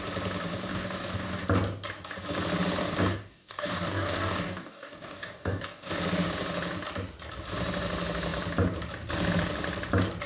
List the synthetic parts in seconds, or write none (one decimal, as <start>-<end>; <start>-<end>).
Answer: 0.7-1.4; 2.8-5.9